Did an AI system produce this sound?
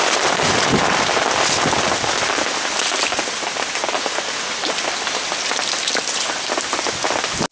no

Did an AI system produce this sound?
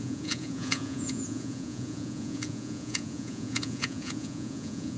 yes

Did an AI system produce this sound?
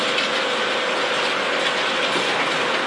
no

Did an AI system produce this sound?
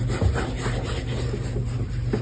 no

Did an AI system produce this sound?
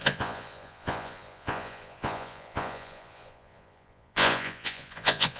yes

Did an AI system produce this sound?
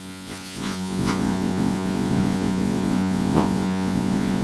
yes